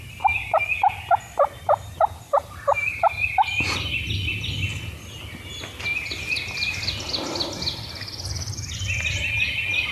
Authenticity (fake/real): real